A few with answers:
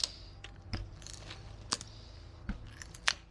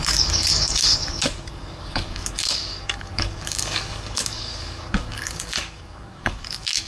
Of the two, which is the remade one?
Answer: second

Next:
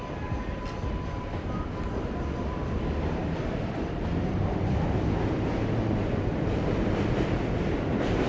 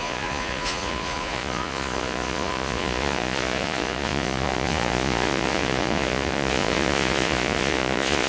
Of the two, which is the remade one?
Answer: second